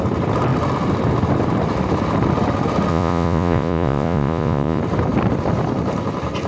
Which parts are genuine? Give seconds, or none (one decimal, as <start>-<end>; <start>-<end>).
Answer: 0.0-2.9; 4.8-6.5